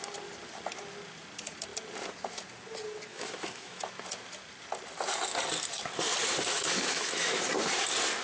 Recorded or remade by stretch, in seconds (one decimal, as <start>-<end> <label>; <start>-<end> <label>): 0.0-3.1 recorded; 3.1-3.8 remade; 3.8-6.5 recorded; 6.5-7.4 remade; 7.4-8.2 recorded